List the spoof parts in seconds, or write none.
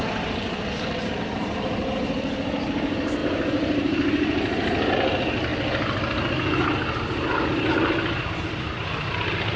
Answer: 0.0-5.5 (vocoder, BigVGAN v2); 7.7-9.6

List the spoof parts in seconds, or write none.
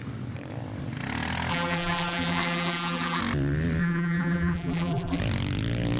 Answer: 1.5-3.2 (vocoder, BigVGAN v2); 3.8-5.2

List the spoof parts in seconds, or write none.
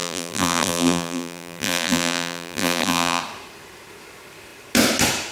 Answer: 0.0-3.2 (vocoder, BigVGAN v2)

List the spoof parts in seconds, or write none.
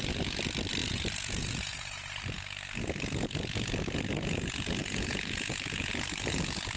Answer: 0.8-2.2 (vocoder, Vocos); 4.8-5.9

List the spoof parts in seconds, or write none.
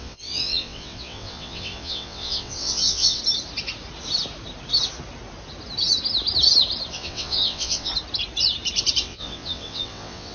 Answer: 0.0-3.2 (vocoder, WaveNeXt); 6.9-7.9; 9.0-10.3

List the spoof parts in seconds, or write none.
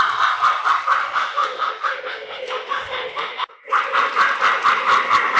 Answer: 1.0-3.6 (autoencoder, DAC-VAE)